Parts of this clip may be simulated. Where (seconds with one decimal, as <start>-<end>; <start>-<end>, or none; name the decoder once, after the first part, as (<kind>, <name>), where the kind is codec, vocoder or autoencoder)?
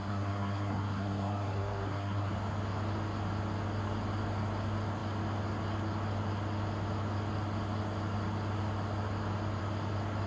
0.0-2.3 (codec, SNAC)